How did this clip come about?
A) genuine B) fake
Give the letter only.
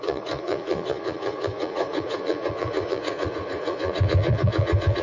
B